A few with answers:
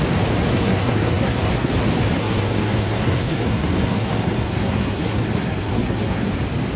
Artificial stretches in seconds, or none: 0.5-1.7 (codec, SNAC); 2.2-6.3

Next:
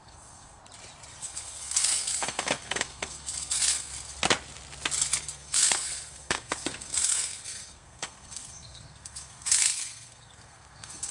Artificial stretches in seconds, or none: 0.0-0.6 (codec, SNAC); 1.2-3.9; 5.2-11.1